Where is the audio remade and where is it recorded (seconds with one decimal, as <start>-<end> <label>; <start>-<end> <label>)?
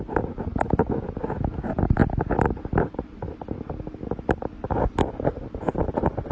0.0-6.3 recorded